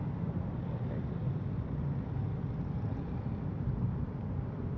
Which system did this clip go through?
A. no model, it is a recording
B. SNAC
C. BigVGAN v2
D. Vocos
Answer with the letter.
A